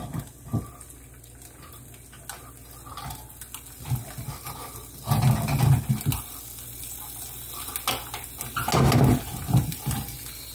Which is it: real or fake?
real